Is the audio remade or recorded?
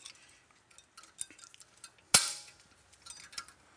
recorded